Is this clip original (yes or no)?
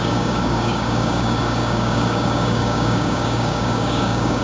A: no